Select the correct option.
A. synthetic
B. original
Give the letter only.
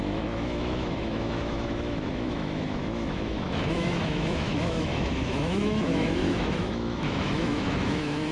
A